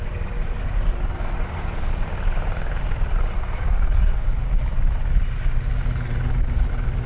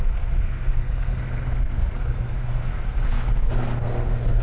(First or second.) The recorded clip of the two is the first